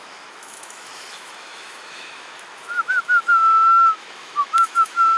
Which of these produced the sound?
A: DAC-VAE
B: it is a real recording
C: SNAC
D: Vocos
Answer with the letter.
A